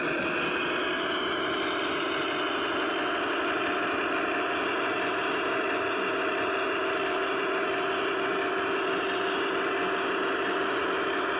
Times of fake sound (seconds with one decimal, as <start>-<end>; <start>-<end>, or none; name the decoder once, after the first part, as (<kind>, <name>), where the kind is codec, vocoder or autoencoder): none